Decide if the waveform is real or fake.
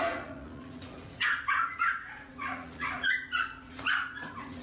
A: fake